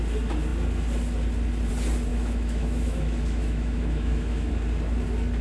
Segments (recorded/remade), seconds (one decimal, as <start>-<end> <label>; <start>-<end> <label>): 0.0-2.1 recorded; 2.1-4.5 remade; 4.5-5.4 recorded